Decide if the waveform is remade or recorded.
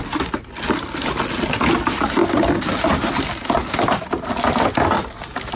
recorded